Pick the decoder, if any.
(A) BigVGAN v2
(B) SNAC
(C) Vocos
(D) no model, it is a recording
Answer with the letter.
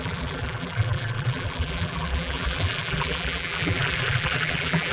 A